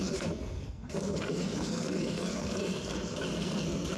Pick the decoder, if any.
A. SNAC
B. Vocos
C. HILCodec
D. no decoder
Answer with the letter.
A